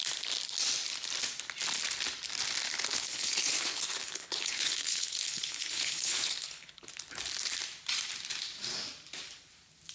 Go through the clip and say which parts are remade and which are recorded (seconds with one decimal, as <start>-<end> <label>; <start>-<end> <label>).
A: 0.0-2.9 recorded; 2.9-6.9 remade; 6.9-9.9 recorded